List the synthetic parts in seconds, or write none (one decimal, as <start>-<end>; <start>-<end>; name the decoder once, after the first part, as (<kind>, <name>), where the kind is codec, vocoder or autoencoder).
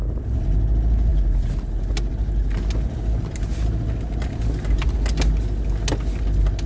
none